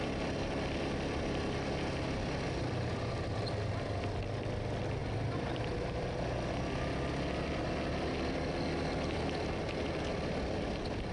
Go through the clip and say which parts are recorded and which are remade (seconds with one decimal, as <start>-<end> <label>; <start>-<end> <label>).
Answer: 0.0-11.1 recorded